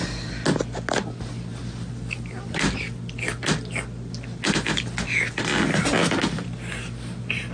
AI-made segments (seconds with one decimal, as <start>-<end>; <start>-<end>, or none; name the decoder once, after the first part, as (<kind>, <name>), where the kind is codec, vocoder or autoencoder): none